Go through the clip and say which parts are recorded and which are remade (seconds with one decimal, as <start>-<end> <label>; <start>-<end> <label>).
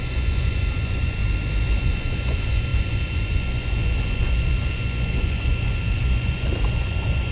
0.0-1.2 remade; 1.2-1.8 recorded; 1.8-7.3 remade